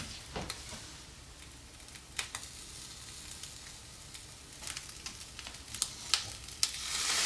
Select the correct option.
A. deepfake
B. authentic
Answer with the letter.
B